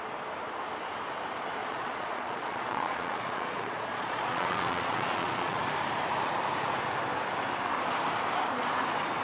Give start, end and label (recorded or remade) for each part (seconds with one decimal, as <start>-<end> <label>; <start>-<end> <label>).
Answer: 0.0-1.6 recorded; 1.6-5.6 remade; 5.6-9.2 recorded